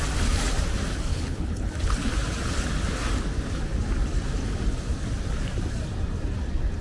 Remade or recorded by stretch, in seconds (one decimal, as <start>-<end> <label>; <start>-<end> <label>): 0.0-1.1 recorded; 1.1-1.7 remade; 1.7-6.8 recorded

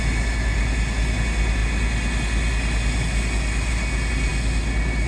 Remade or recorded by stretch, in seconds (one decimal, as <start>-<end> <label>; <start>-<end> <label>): 0.0-5.1 recorded

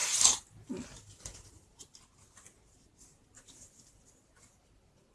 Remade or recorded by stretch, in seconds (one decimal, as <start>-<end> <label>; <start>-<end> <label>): 0.0-5.1 recorded

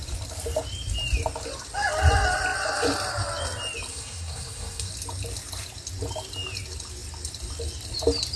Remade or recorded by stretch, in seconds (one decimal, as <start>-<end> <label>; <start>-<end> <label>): 0.0-3.9 recorded; 3.9-4.9 remade; 4.9-8.4 recorded

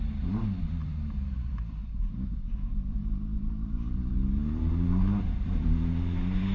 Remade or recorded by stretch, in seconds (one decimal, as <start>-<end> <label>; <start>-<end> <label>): 0.0-6.5 remade

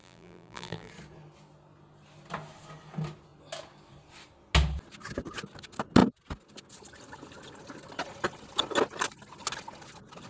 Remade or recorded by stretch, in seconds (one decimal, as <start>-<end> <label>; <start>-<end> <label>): 0.0-0.9 remade; 0.9-10.3 recorded

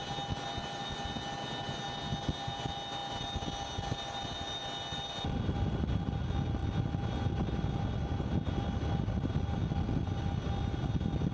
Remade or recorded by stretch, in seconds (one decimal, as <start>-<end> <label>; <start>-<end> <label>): 0.0-11.3 recorded